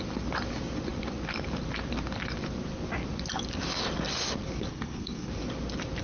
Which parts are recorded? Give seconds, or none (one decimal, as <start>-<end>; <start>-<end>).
0.0-4.7; 5.3-6.0